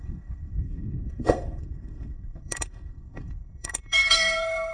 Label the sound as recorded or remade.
remade